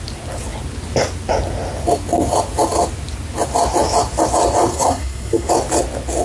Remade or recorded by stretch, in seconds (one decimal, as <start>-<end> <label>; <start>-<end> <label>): 0.0-4.7 recorded; 4.7-5.5 remade; 5.5-6.2 recorded